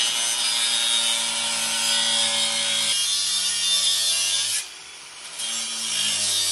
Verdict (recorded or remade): recorded